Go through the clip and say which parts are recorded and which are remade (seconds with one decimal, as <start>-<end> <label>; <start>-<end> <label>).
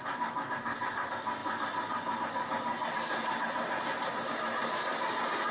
0.0-5.5 recorded